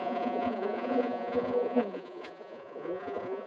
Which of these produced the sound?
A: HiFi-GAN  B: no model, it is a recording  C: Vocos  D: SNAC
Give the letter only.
C